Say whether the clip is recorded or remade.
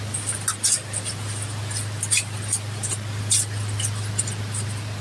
recorded